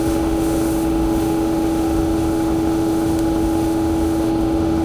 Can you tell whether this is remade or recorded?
remade